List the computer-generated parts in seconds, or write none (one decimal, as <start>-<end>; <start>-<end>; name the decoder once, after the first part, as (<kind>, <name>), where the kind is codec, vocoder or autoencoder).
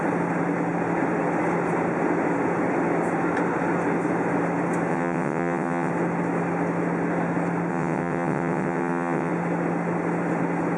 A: 4.9-5.9 (vocoder, WaveNeXt); 7.7-9.3